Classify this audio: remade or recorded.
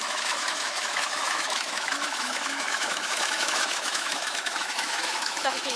remade